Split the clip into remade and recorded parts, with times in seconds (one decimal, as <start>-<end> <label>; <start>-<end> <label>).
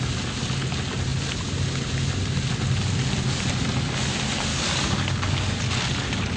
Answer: 0.0-4.5 recorded; 4.5-5.6 remade; 5.6-6.4 recorded